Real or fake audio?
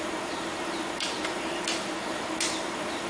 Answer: fake